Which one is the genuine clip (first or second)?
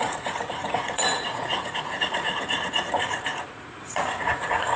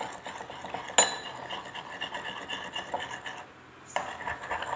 second